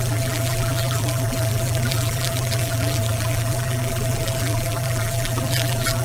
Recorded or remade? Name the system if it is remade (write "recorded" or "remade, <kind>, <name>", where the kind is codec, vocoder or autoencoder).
remade, vocoder, BigVGAN v2